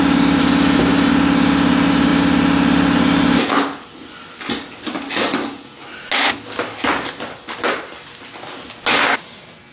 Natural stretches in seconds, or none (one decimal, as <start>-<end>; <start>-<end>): 0.0-0.4; 1.1-9.7